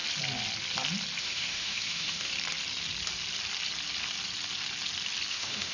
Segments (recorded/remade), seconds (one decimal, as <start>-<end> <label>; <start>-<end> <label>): 0.0-1.2 recorded; 1.2-2.3 remade; 2.3-5.3 recorded; 5.3-5.7 remade

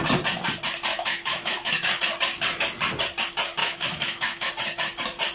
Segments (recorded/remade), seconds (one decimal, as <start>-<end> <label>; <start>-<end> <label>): 0.0-0.9 recorded; 0.9-1.7 remade; 1.7-3.6 recorded; 3.6-4.5 remade; 4.5-5.3 recorded

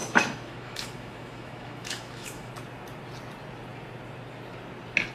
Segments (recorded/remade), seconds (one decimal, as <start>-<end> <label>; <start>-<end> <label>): 0.0-2.5 remade; 2.5-5.1 recorded

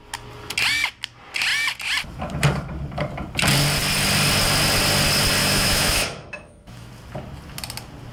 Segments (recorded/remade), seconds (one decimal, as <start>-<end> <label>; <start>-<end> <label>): 0.0-5.4 recorded; 5.4-6.9 remade; 6.9-8.1 recorded